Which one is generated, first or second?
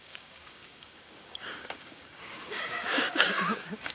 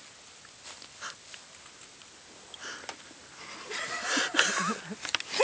first